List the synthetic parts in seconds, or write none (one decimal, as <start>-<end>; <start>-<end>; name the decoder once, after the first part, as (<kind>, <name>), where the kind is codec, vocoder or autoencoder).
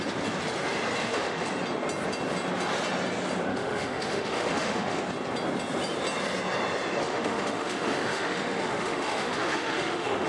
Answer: 1.0-1.5 (autoencoder, DAC-VAE); 3.5-5.0; 7.0-10.3